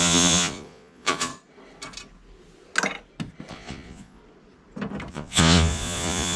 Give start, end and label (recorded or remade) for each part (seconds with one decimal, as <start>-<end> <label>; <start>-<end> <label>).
0.0-1.3 remade; 1.3-3.5 recorded; 3.5-4.2 remade; 4.2-5.1 recorded; 5.1-6.4 remade